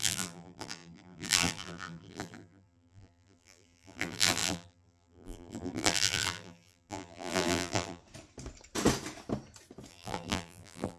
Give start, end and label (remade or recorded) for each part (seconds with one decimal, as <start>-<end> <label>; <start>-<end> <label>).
0.0-8.0 remade; 8.0-9.9 recorded; 9.9-11.0 remade